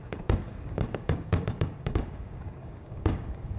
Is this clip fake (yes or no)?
yes